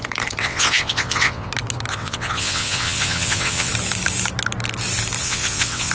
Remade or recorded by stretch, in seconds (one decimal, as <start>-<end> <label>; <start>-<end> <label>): 0.0-0.4 recorded; 0.4-1.5 remade; 1.5-1.9 recorded; 1.9-3.7 remade; 3.7-5.2 recorded; 5.2-5.9 remade